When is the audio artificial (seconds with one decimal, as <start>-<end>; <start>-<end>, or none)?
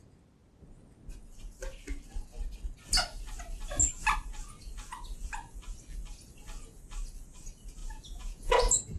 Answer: 7.8-8.6